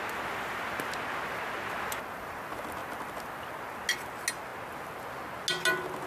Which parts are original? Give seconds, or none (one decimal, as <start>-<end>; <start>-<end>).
0.0-6.1